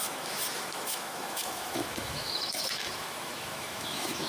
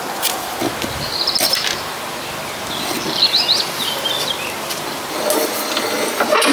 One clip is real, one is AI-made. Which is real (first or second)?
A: second